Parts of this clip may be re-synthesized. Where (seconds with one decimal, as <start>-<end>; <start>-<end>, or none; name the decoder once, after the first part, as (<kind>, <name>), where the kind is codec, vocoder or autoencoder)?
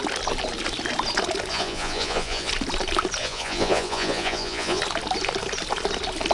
1.5-2.5 (vocoder, Vocos); 3.2-4.8